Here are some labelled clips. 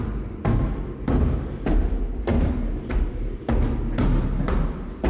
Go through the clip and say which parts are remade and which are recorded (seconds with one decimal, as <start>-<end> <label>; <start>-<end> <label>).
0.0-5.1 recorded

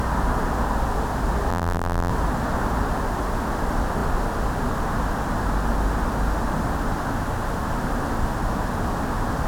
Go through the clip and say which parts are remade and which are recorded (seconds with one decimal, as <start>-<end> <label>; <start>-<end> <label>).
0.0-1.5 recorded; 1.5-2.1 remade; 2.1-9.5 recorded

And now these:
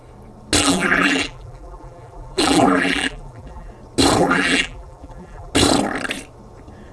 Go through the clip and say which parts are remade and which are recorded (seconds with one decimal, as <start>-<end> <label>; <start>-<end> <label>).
0.0-0.6 recorded; 0.6-3.7 remade; 3.7-4.2 recorded; 4.2-5.5 remade; 5.5-6.9 recorded

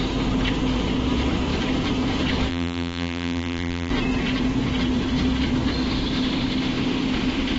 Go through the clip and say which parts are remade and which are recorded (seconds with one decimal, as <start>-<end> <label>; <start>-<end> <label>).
0.0-2.5 recorded; 2.5-3.9 remade; 3.9-7.6 recorded

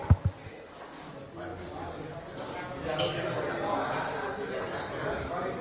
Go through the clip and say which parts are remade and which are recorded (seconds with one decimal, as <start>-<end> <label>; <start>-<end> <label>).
0.0-5.6 recorded

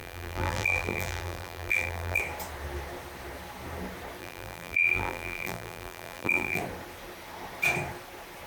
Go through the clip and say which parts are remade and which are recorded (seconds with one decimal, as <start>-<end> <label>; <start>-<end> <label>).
0.0-2.2 remade; 2.2-4.2 recorded; 4.2-6.6 remade; 6.6-8.5 recorded

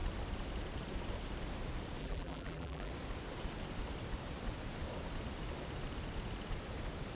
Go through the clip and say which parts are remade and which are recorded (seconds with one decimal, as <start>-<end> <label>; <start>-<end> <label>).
0.0-2.0 recorded; 2.0-2.9 remade; 2.9-7.1 recorded